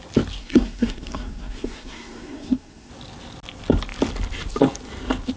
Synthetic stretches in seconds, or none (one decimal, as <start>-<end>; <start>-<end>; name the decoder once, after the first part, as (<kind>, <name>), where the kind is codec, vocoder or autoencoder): 0.4-2.9 (codec, SNAC)